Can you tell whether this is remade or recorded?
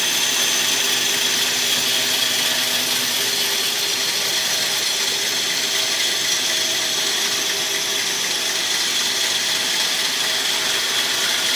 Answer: recorded